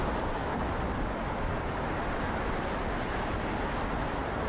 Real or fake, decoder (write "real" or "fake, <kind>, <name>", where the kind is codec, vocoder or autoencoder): real